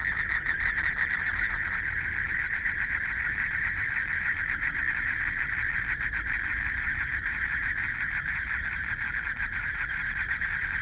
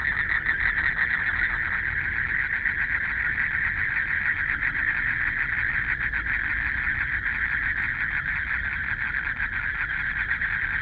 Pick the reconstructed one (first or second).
first